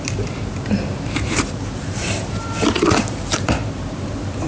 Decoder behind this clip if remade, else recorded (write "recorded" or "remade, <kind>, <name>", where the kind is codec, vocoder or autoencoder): remade, vocoder, BigVGAN v2